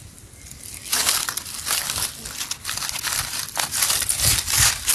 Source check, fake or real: fake